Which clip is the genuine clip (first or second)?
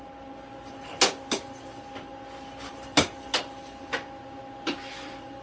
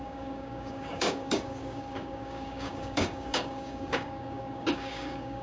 first